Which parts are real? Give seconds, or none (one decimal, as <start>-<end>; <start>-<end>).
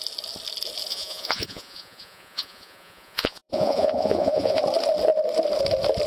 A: 0.0-0.9; 4.6-6.1